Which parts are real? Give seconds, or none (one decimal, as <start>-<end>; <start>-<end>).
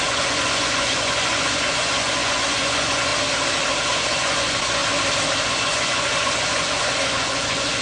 3.1-3.8; 4.8-5.5